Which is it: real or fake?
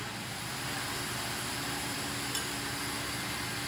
real